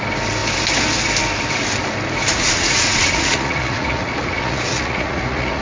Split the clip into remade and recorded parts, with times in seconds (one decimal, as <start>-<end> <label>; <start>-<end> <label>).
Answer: 0.0-2.3 recorded; 2.3-5.6 remade

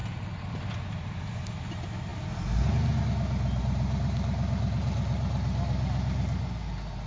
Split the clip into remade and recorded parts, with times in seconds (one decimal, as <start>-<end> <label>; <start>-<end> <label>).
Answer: 0.0-7.1 recorded

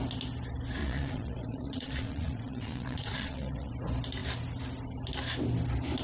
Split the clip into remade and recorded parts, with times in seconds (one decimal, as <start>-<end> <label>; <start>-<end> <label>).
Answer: 0.0-0.8 recorded; 0.8-3.7 remade; 3.7-6.0 recorded